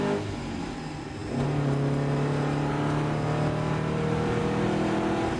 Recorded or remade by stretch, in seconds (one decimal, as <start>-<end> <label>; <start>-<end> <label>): 0.0-5.4 recorded

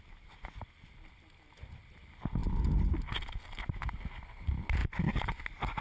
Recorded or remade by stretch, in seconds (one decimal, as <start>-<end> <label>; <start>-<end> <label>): 0.0-5.8 recorded

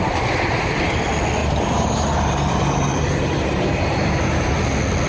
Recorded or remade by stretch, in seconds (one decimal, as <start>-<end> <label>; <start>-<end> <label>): 0.0-1.4 recorded; 1.4-4.5 remade; 4.5-5.1 recorded

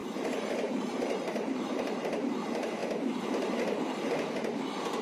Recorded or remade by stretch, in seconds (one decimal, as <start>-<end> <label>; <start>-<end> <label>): 0.0-2.8 remade; 2.8-4.6 recorded; 4.6-5.0 remade

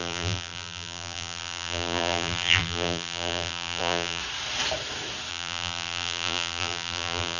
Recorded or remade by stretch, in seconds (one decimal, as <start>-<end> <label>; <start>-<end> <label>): 0.0-4.2 remade; 4.2-5.3 recorded; 5.3-7.4 remade

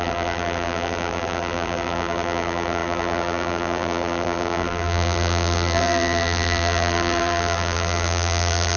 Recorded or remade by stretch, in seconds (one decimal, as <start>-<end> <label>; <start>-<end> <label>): 0.0-8.8 remade